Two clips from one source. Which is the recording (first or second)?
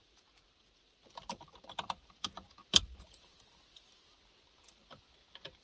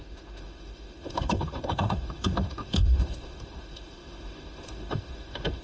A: first